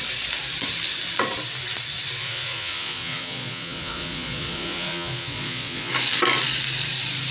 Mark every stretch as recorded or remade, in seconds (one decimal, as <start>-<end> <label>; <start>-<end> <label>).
0.0-2.2 recorded; 2.2-5.9 remade; 5.9-7.3 recorded